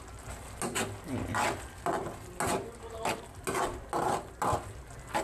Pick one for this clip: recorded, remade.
recorded